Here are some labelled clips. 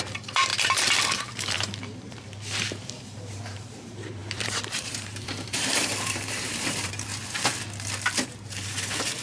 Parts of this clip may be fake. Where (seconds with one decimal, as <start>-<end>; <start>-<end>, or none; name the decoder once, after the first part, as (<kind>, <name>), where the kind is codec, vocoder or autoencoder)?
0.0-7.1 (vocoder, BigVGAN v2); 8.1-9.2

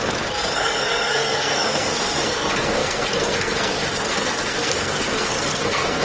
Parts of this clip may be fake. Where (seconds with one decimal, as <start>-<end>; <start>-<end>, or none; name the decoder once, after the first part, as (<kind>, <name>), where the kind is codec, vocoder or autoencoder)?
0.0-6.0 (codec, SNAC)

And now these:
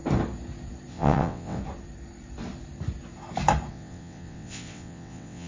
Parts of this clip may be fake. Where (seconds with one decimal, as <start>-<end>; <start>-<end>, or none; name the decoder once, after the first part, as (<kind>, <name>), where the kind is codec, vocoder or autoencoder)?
0.9-1.6 (vocoder, WaveNeXt); 3.7-5.5

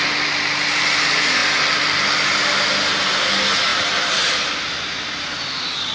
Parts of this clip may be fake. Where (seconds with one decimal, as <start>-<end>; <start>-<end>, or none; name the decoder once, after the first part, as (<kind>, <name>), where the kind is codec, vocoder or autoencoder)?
none